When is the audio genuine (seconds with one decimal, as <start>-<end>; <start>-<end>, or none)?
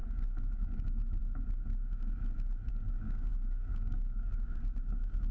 0.0-0.5; 1.2-2.7